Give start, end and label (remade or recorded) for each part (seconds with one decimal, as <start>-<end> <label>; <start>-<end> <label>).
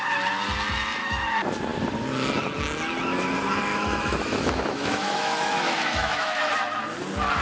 0.0-3.7 recorded; 3.7-6.5 remade; 6.5-7.4 recorded